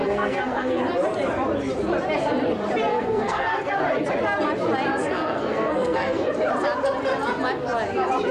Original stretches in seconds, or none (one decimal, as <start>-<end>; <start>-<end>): 0.8-2.9; 3.8-4.9; 6.3-8.3